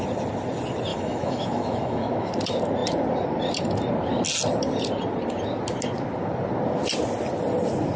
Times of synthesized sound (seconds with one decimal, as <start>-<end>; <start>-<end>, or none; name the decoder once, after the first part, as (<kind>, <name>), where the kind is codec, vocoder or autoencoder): 0.9-2.3 (autoencoder, DAC-VAE)